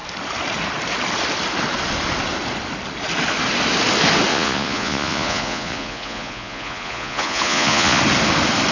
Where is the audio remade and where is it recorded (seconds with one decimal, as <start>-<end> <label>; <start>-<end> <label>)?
0.0-4.3 recorded; 4.3-8.0 remade; 8.0-8.7 recorded